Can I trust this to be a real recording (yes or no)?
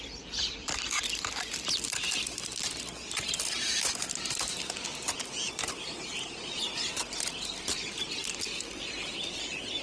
yes